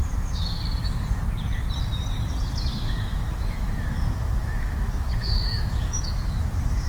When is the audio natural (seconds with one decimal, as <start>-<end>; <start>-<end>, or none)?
0.6-2.7